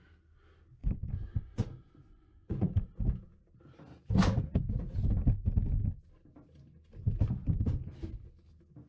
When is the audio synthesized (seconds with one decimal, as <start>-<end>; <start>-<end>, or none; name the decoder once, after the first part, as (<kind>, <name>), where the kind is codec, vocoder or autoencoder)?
0.8-2.7 (vocoder, Vocos)